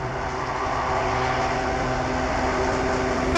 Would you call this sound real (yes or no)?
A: yes